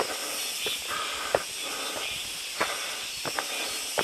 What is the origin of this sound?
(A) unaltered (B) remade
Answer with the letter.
A